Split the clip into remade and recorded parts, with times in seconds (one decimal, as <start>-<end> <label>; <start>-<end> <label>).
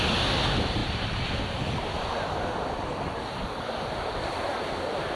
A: 0.0-5.2 recorded